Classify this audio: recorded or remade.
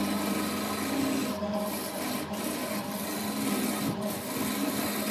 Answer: recorded